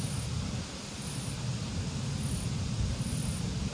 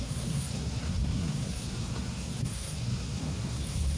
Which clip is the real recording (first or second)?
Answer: first